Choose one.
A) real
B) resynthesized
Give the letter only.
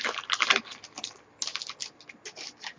A